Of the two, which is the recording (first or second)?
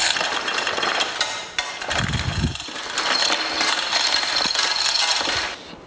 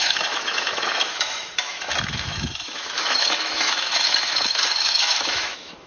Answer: first